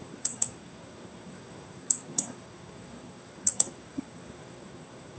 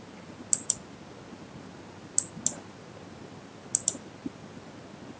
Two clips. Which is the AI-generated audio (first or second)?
first